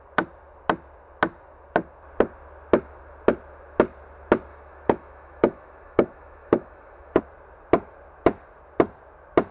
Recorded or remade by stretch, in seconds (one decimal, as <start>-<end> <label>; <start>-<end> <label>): 0.0-4.5 recorded; 4.5-7.2 remade; 7.2-9.5 recorded